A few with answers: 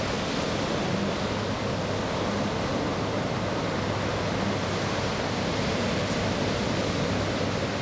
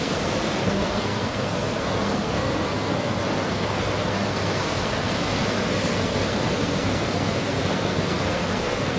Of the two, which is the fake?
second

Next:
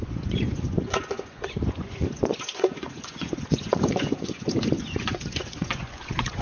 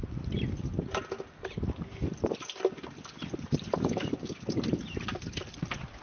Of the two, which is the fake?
first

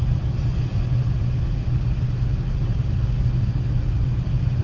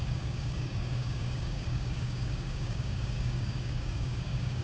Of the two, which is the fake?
second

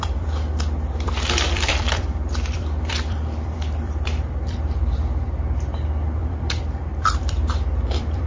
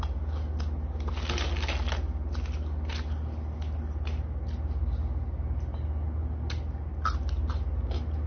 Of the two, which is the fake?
first